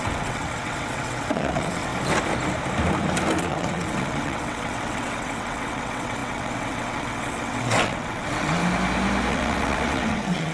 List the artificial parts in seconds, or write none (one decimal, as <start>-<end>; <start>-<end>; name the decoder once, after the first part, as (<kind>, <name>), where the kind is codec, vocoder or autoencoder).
0.0-1.9 (vocoder, WaveNeXt); 3.4-8.6; 9.3-10.5